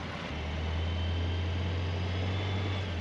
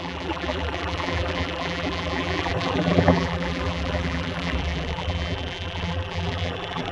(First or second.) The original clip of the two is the first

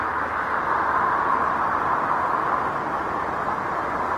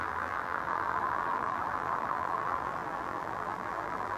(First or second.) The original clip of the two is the first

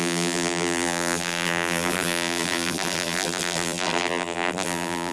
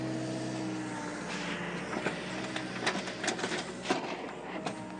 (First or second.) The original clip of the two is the second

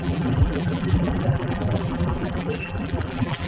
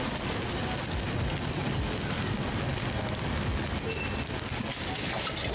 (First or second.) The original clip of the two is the second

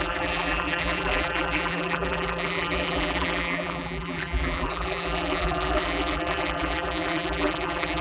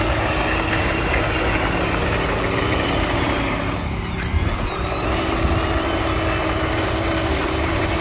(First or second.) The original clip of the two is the second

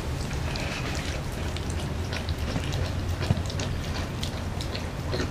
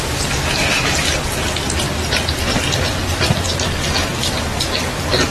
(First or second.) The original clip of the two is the second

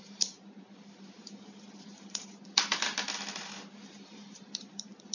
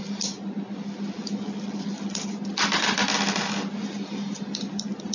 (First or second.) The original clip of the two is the second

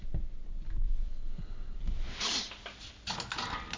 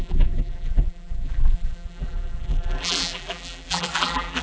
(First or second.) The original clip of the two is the first